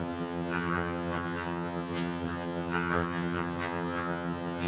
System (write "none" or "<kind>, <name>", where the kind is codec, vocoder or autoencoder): vocoder, HiFi-GAN